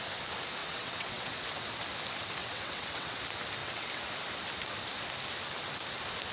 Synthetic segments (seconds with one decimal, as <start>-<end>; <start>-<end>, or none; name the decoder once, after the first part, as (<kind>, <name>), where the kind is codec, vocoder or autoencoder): 0.6-1.3 (vocoder, WaveNeXt); 2.4-3.2; 3.6-4.1